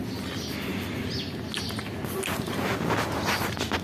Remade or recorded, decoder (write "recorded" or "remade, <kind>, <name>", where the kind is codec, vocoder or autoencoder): recorded